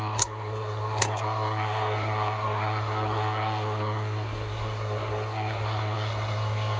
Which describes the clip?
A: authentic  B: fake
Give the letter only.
B